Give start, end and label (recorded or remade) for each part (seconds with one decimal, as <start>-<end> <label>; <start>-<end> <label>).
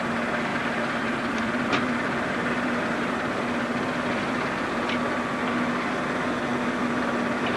0.0-0.5 recorded; 0.5-4.7 remade; 4.7-7.6 recorded